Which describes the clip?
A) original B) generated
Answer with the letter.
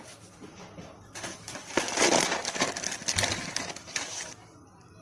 A